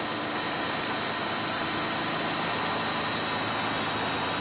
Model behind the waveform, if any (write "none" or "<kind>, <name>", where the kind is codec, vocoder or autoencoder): none